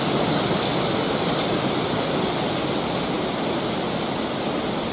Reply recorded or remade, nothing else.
recorded